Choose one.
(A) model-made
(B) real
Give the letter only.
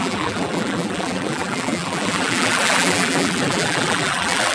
A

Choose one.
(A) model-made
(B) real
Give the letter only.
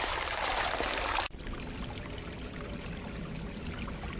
B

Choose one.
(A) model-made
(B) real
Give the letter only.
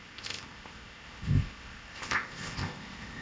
A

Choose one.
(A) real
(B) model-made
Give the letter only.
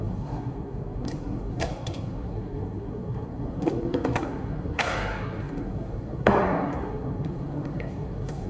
B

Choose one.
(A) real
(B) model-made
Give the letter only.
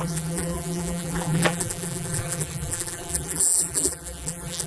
B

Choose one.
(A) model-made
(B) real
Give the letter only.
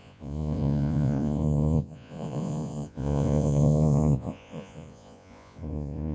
A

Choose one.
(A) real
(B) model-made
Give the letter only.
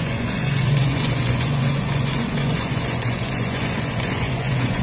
B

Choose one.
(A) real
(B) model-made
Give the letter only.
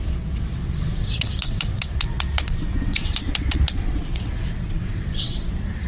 B